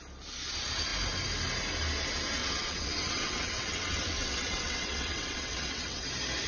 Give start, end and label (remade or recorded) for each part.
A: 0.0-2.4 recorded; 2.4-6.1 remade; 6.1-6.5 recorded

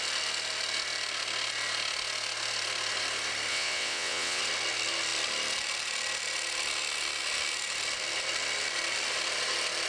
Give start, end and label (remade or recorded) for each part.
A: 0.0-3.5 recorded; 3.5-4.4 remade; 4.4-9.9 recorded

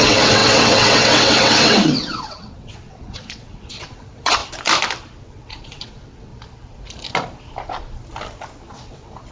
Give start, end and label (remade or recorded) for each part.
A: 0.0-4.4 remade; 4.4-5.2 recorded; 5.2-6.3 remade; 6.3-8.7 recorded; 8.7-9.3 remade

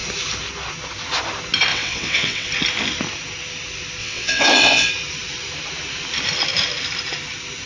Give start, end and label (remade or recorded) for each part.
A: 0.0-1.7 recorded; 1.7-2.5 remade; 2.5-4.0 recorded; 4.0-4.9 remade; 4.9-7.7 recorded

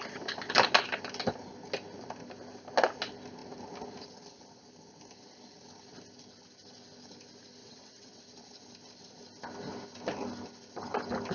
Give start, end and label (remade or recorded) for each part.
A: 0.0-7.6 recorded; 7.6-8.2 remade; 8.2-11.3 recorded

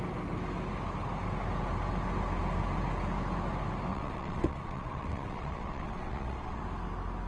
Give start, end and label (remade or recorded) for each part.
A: 0.0-3.9 recorded; 3.9-6.6 remade; 6.6-7.3 recorded

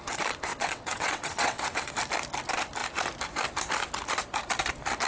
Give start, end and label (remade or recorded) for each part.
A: 0.0-0.5 recorded; 0.5-1.9 remade; 1.9-5.1 recorded